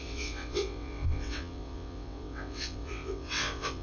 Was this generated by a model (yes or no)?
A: yes